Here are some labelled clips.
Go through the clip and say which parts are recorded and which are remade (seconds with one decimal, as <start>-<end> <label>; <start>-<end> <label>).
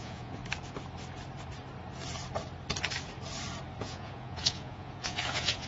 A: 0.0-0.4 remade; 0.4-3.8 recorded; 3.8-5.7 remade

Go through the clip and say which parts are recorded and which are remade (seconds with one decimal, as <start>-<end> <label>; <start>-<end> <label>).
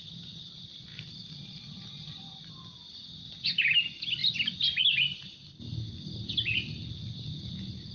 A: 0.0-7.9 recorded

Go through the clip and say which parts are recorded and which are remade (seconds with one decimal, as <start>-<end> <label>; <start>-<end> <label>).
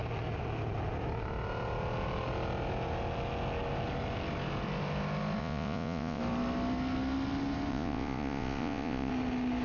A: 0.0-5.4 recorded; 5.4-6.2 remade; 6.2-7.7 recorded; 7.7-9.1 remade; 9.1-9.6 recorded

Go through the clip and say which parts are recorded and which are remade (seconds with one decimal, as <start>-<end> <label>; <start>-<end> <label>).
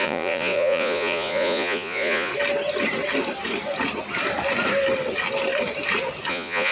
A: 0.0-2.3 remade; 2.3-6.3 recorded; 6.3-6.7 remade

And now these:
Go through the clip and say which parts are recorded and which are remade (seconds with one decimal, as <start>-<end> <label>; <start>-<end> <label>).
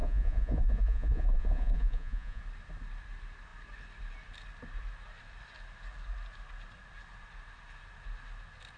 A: 0.0-2.4 remade; 2.4-8.8 recorded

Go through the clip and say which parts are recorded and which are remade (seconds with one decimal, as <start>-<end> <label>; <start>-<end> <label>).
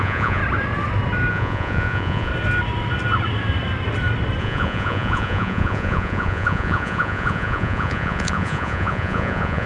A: 0.0-0.4 remade; 0.4-1.3 recorded; 1.3-2.3 remade; 2.3-4.4 recorded; 4.4-9.7 remade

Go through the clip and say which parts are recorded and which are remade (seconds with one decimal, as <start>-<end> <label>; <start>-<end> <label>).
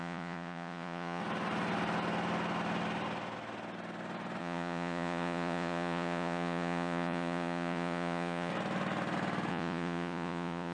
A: 0.0-1.2 remade; 1.2-4.4 recorded; 4.4-8.5 remade; 8.5-9.5 recorded; 9.5-10.7 remade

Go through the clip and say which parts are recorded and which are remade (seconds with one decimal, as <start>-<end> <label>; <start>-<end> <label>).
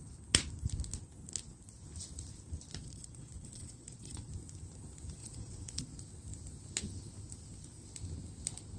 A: 0.0-2.8 recorded; 2.8-4.3 remade; 4.3-5.2 recorded; 5.2-5.8 remade; 5.8-8.8 recorded